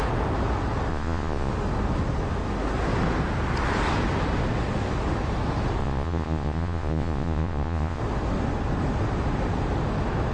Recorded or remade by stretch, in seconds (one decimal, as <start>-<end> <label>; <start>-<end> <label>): 0.0-0.9 recorded; 0.9-1.5 remade; 1.5-5.8 recorded; 5.8-8.0 remade; 8.0-10.3 recorded